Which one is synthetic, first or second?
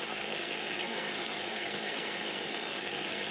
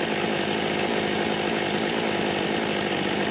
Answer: first